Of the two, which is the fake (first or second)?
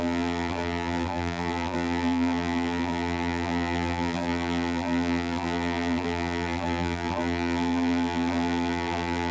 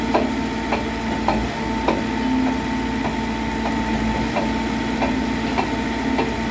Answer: first